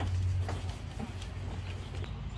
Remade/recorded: recorded